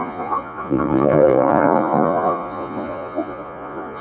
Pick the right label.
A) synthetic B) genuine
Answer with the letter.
A